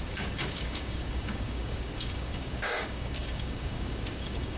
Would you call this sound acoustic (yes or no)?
no